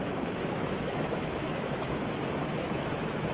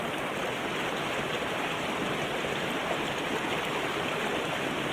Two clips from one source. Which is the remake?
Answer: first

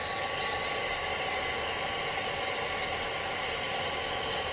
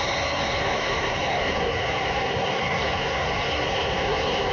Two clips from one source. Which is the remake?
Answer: second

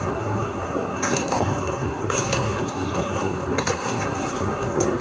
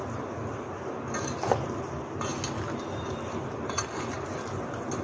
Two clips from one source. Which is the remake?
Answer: first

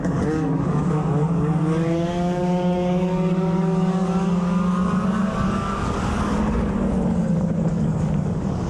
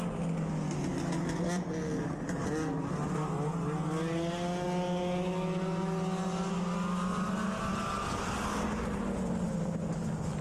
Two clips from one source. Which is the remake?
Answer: first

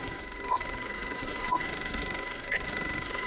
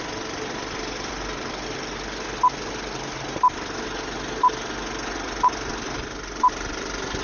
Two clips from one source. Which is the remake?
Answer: first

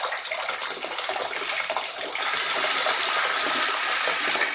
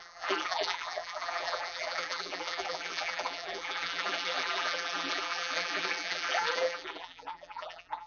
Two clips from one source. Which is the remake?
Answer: second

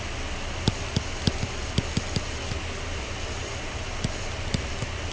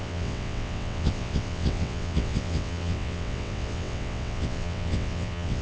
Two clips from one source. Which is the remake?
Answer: second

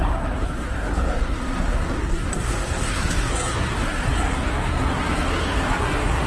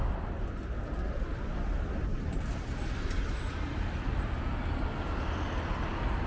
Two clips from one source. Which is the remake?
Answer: first